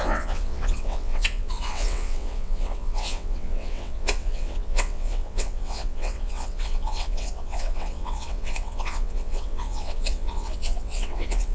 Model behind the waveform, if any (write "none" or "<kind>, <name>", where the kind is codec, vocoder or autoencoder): vocoder, WaveNeXt